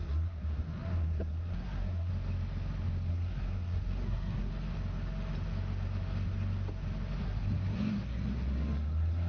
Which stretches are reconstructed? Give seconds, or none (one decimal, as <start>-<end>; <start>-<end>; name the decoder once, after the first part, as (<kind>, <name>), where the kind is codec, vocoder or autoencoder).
0.0-2.1 (codec, SNAC); 3.1-4.5; 7.2-9.3